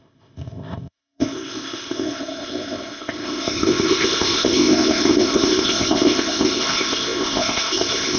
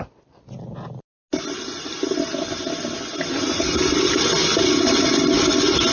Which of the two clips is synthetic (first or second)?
first